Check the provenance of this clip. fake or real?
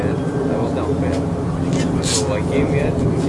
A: real